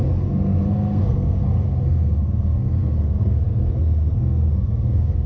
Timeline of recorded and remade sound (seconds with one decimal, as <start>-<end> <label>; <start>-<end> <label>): 0.0-5.3 remade

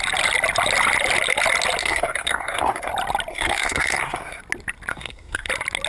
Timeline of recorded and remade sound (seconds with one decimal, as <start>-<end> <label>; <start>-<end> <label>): 0.0-1.8 recorded; 1.8-2.9 remade; 2.9-3.3 recorded; 3.3-4.4 remade; 4.4-4.9 recorded; 4.9-5.5 remade; 5.5-5.9 recorded